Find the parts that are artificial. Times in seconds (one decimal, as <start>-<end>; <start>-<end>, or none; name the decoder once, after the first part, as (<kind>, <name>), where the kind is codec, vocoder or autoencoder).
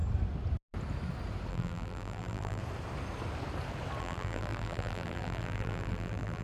1.5-2.6 (vocoder, BigVGAN v2); 4.0-6.4